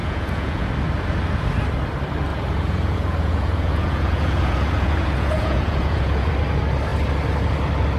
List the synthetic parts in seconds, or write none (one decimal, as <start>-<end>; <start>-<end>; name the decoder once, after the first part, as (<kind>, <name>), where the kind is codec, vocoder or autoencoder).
0.0-0.7 (vocoder, Vocos); 2.3-6.3